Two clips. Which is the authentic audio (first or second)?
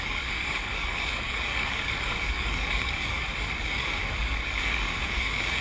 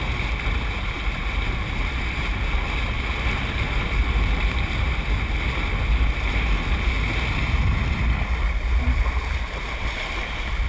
second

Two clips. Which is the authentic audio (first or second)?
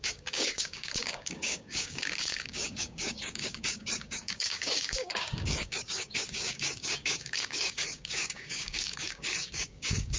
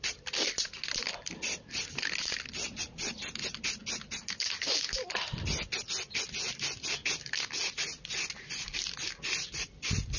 second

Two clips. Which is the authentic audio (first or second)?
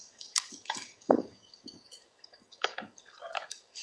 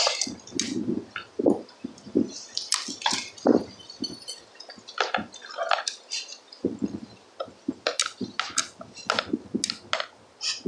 second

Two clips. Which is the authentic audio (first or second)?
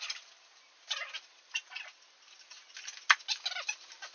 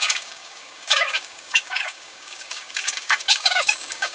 first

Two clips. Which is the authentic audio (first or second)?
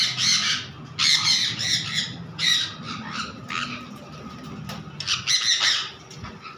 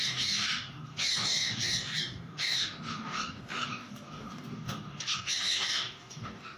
first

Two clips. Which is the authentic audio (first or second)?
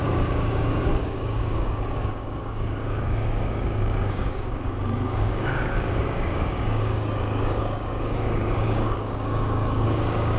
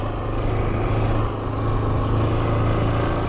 second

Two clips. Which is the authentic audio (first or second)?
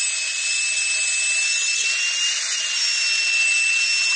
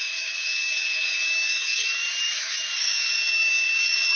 first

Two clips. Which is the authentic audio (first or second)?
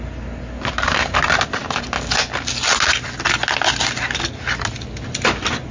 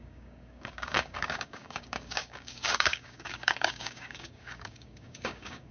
first